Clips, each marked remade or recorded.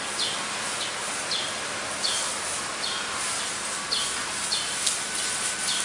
recorded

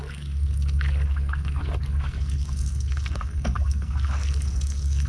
remade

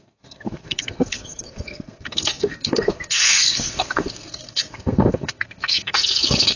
remade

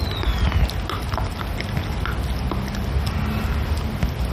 recorded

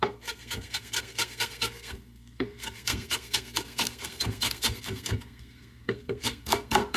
remade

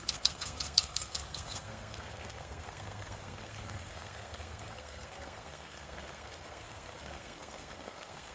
remade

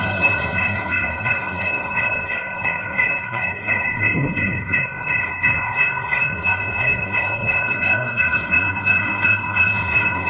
remade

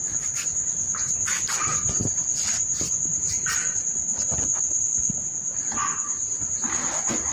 recorded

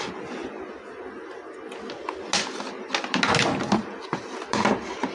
recorded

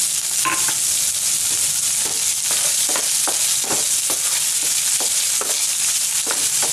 recorded